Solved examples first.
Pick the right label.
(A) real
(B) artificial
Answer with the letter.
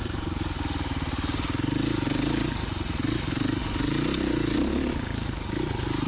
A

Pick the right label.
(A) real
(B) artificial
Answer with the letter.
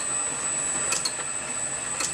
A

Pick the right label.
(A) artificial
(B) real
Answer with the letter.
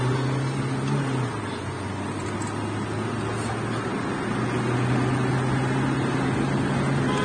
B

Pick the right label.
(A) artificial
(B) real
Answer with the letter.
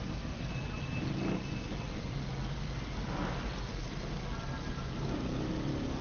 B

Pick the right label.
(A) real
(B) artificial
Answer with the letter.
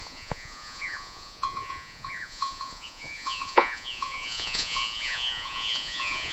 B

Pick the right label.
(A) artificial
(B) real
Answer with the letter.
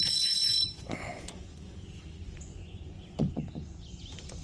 A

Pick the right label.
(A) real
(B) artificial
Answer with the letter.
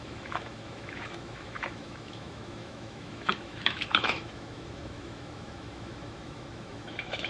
B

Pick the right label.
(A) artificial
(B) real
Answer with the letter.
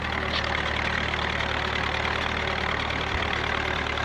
B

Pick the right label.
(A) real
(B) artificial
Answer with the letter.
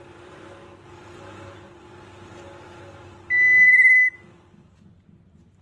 A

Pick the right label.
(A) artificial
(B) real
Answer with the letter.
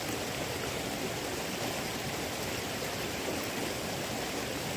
B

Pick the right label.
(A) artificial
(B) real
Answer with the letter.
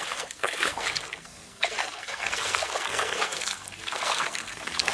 A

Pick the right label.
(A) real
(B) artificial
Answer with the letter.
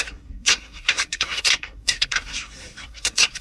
B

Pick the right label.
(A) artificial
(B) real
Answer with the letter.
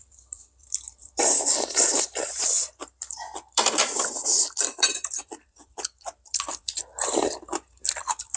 A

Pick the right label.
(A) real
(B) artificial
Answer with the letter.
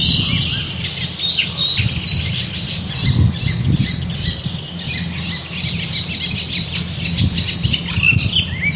A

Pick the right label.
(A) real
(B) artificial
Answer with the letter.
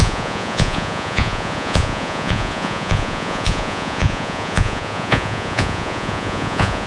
B